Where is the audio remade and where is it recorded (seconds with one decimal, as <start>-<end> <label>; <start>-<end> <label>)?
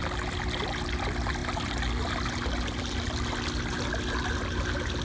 0.0-5.0 recorded